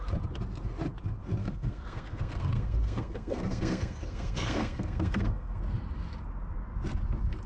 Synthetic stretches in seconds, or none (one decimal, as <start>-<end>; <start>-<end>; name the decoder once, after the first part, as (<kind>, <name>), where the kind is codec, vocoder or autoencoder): 1.4-5.6 (codec, SNAC)